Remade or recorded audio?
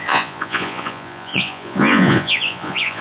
remade